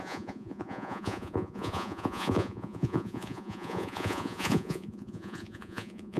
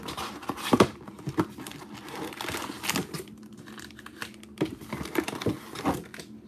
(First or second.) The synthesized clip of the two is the first